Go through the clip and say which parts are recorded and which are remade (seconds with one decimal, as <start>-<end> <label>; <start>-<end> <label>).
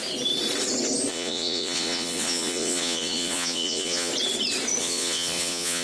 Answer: 0.0-1.1 recorded; 1.1-4.1 remade; 4.1-4.8 recorded; 4.8-5.8 remade